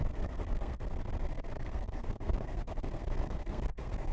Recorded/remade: remade